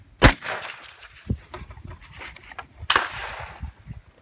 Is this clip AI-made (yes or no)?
no